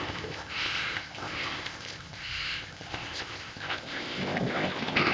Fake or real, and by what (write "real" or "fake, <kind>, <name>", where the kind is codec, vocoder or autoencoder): fake, codec, ZipCodec